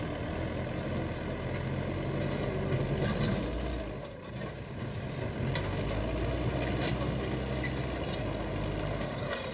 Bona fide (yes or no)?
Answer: yes